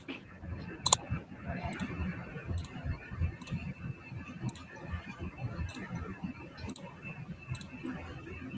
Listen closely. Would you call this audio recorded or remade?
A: recorded